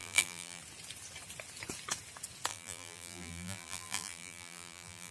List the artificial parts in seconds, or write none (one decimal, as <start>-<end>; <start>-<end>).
0.0-0.6; 2.5-5.1